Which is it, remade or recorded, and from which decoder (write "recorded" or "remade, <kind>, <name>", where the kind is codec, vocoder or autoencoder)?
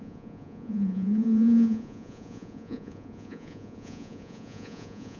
remade, vocoder, Vocos